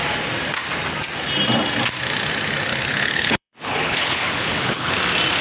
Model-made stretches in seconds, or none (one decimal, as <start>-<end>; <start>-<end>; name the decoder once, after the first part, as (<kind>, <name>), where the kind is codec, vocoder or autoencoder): 2.7-4.9 (codec, HILCodec)